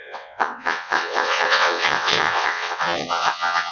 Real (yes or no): no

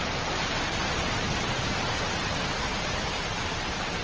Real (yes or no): yes